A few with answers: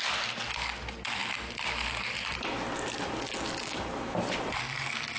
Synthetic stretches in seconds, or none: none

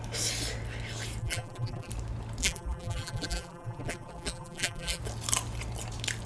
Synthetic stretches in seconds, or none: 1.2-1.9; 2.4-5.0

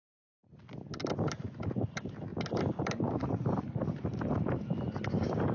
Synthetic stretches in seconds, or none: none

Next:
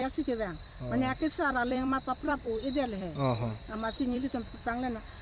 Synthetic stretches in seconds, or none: 1.2-4.3

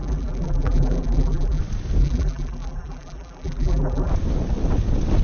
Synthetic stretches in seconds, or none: 0.0-1.6; 2.0-4.1